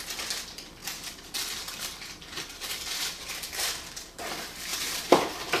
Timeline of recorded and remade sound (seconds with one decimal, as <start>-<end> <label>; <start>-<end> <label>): 0.0-0.8 recorded; 0.8-4.2 remade; 4.2-4.7 recorded; 4.7-5.6 remade